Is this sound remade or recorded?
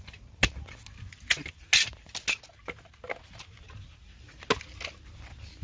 recorded